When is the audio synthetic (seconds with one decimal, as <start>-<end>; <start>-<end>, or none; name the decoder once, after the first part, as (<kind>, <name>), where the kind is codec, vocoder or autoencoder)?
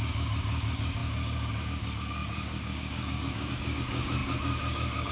0.0-5.1 (codec, DAC)